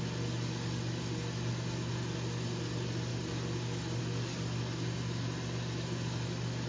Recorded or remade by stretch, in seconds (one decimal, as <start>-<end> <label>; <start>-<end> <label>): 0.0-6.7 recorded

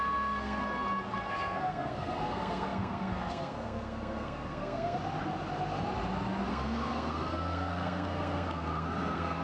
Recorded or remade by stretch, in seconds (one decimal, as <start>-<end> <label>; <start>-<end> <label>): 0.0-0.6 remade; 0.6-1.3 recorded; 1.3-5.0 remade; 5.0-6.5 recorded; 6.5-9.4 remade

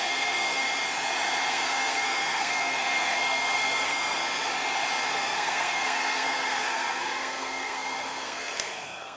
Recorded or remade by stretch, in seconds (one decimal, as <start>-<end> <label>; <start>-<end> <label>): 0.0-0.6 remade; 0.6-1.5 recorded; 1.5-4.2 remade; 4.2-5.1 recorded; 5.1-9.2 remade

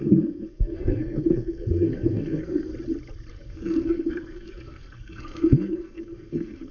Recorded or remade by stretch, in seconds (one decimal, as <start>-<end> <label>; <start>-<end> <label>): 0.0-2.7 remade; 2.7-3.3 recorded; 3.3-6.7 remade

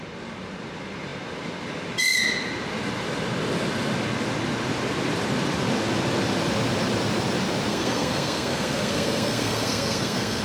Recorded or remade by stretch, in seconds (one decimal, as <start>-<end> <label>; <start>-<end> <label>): 0.0-7.7 recorded; 7.7-10.4 remade